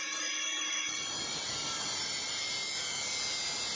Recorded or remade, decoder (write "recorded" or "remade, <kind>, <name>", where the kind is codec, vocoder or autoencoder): recorded